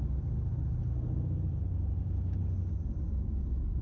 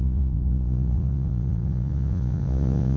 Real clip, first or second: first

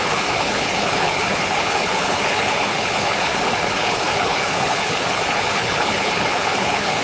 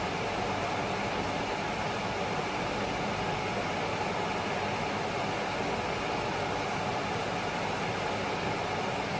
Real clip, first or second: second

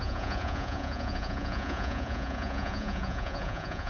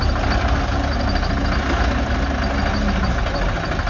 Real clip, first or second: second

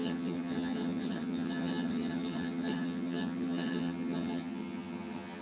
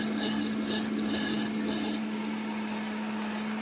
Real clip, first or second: second